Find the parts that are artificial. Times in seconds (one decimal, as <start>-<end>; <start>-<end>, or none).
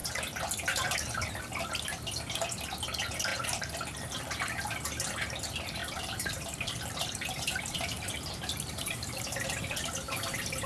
0.0-0.5; 5.8-10.7